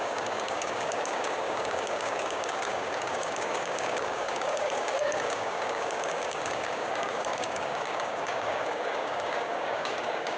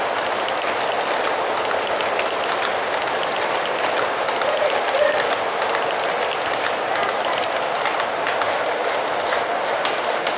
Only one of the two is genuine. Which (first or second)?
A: second